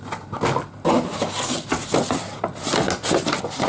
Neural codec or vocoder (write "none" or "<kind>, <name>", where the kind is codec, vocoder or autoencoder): none